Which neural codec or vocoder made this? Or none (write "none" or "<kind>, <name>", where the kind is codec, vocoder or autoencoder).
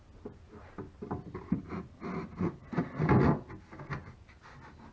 none